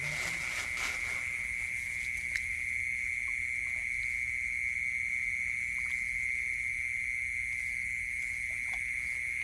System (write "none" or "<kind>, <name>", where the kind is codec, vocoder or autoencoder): none